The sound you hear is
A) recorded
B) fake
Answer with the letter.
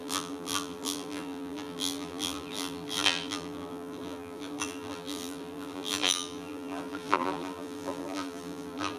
B